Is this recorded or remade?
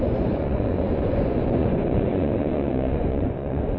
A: remade